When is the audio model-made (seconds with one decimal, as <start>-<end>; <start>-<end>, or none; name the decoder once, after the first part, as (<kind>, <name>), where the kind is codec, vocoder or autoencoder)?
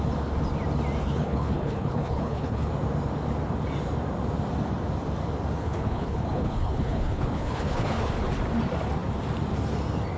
1.0-2.7 (codec, HILCodec); 5.6-8.1